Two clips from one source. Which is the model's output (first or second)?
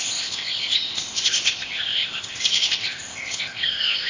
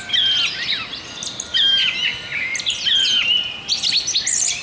first